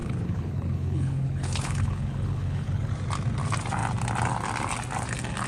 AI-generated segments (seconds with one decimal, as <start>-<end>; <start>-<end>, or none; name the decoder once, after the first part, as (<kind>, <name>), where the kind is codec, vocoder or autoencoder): 0.0-2.9 (codec, HILCodec)